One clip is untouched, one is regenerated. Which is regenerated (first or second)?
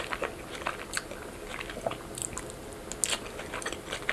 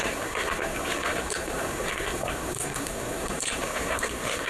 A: second